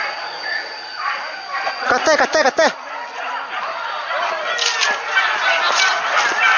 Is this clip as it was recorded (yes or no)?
yes